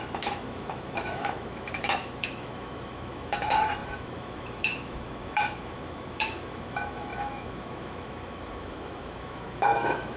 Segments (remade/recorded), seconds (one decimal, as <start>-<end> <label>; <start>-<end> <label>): 0.0-10.2 remade